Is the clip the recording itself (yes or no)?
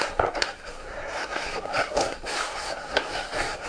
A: no